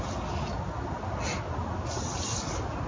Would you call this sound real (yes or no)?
yes